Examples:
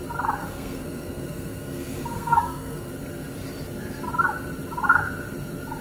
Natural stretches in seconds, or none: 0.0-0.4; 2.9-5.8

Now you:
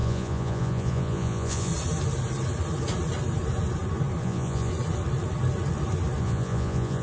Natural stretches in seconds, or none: 1.7-4.2; 4.7-6.2

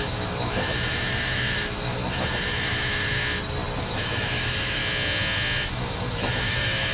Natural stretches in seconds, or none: 3.2-3.8; 4.8-5.7

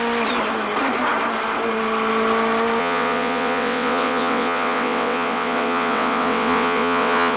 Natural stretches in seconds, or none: 0.0-2.8